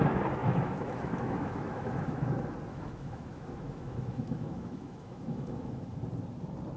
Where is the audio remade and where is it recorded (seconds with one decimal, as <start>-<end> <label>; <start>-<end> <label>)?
0.0-0.4 recorded; 0.4-2.3 remade; 2.3-2.7 recorded; 2.7-6.0 remade; 6.0-6.8 recorded